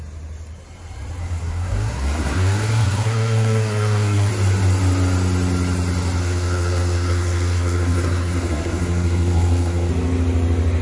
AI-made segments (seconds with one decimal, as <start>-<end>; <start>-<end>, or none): 1.2-4.3; 6.2-9.9